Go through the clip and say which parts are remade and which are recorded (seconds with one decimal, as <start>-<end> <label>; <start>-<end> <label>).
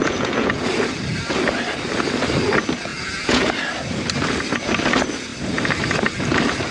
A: 0.0-0.7 remade; 0.7-2.9 recorded; 2.9-3.5 remade; 3.5-6.7 recorded